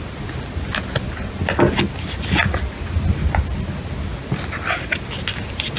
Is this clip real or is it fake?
real